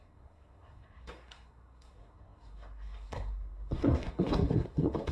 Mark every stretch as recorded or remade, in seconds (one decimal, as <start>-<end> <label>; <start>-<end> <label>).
0.0-5.1 remade